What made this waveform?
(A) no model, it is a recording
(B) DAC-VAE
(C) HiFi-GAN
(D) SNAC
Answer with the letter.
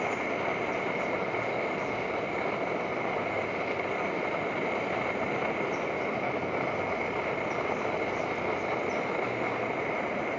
A